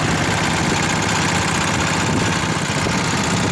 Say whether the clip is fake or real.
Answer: real